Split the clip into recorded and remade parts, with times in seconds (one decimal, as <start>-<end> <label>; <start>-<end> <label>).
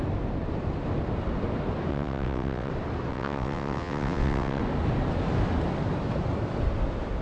0.0-1.9 recorded; 1.9-2.7 remade; 2.7-3.1 recorded; 3.1-4.6 remade; 4.6-7.2 recorded